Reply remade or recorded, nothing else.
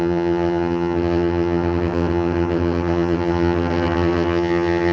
remade